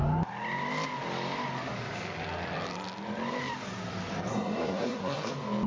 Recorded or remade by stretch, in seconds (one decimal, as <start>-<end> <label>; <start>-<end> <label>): 0.0-4.3 recorded; 4.3-5.3 remade; 5.3-5.7 recorded